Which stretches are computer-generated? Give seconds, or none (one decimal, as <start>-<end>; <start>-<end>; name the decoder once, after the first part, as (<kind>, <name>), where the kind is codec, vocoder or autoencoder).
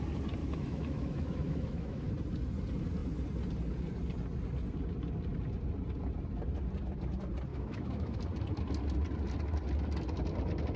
0.4-2.1 (autoencoder, DAC-VAE); 7.5-8.2